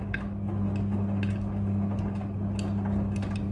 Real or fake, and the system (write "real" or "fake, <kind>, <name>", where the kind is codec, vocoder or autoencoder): real